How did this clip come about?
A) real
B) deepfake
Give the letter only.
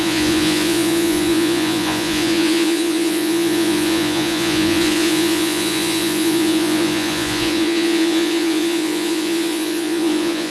B